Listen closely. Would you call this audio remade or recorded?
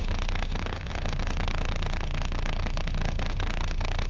remade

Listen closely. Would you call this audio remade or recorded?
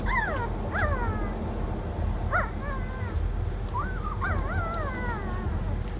recorded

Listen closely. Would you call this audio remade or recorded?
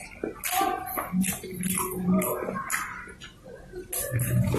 recorded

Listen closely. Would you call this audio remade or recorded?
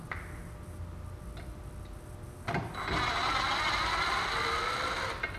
recorded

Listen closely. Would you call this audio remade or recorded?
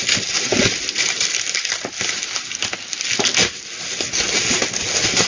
recorded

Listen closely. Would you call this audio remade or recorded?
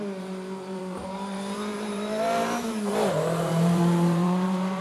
remade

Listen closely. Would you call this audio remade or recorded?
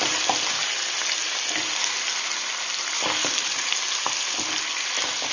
recorded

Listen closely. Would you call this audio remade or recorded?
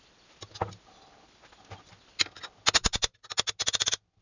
recorded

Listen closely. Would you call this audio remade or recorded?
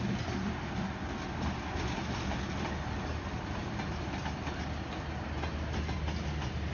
recorded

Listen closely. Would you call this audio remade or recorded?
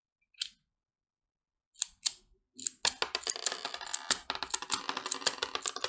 recorded